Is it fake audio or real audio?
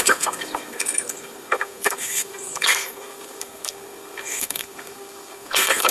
fake